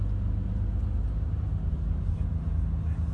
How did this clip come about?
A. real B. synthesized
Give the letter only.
A